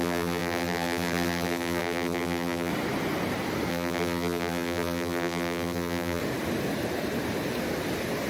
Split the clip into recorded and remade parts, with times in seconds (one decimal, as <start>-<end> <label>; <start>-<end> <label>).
0.0-2.7 remade; 2.7-3.7 recorded; 3.7-6.2 remade; 6.2-8.3 recorded